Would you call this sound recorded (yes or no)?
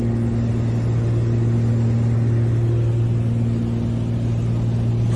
yes